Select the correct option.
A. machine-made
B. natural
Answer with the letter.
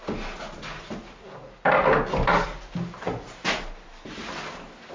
B